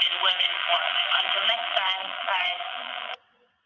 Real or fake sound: fake